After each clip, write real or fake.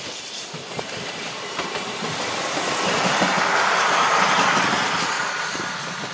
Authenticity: real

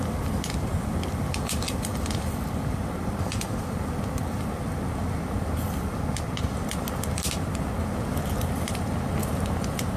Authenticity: real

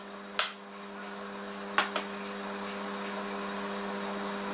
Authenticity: real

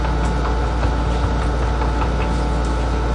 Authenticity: real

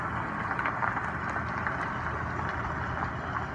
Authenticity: real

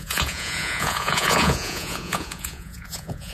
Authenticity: fake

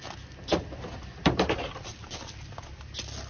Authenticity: real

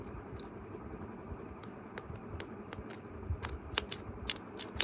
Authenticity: real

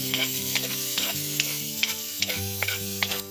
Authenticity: fake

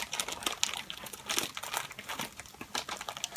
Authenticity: real